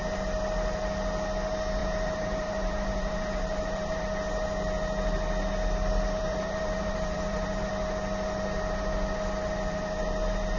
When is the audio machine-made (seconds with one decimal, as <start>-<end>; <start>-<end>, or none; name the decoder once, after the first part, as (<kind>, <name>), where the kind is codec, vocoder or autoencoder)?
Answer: 1.8-4.0 (vocoder, BigVGAN v2); 6.2-7.7